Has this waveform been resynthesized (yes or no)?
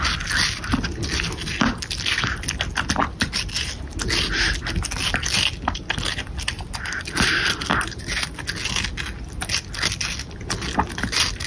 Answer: no